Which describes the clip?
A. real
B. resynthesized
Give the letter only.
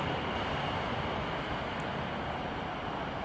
A